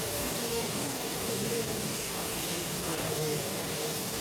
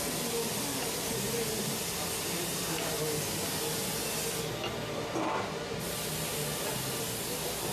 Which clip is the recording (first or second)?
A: second